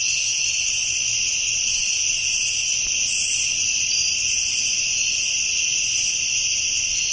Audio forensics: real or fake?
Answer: real